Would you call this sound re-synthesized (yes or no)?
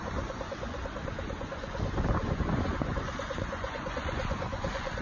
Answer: yes